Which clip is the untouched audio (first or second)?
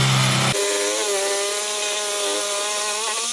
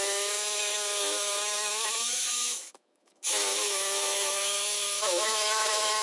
first